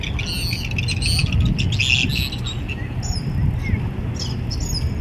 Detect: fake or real real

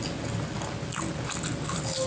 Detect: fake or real real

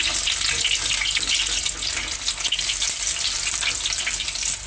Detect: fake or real real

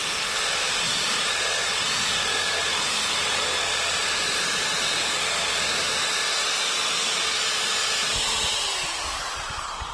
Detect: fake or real fake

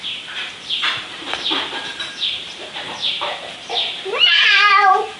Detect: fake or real fake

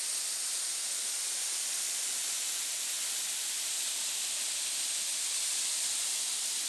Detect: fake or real real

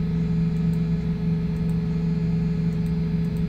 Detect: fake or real real